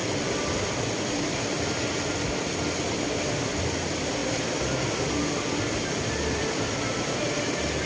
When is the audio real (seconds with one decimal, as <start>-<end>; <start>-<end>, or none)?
0.0-7.9